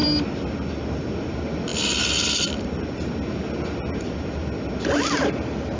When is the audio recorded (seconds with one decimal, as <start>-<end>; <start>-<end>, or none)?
0.0-5.8